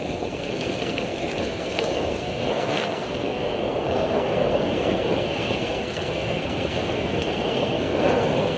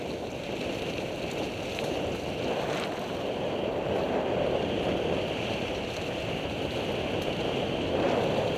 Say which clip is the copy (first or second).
first